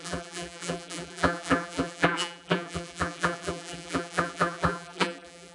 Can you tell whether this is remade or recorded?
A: remade